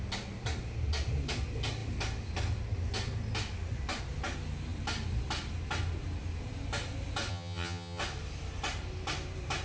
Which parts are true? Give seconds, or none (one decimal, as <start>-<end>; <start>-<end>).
0.0-7.3; 8.0-9.6